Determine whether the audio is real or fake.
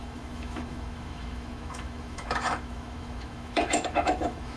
fake